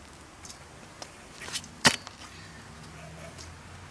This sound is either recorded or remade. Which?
recorded